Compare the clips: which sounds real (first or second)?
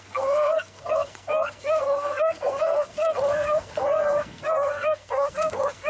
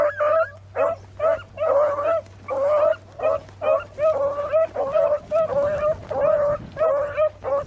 second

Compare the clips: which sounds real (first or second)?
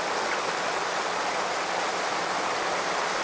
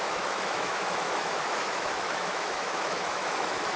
first